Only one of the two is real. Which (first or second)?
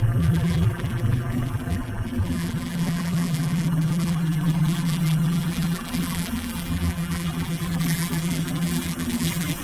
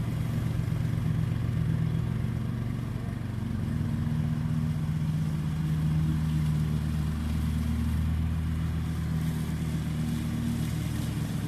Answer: second